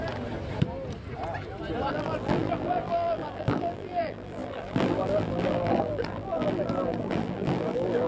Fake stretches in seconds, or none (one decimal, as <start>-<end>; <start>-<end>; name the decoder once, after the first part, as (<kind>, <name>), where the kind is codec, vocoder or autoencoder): 1.9-8.1 (vocoder, BigVGAN v2)